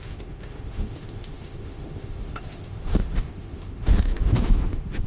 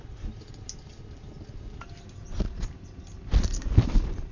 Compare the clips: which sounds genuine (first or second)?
second